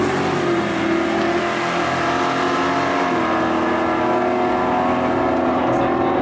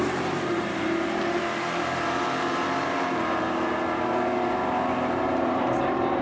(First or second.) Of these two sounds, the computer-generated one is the second